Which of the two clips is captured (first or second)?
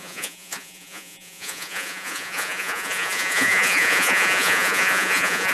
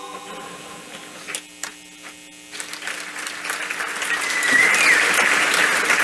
second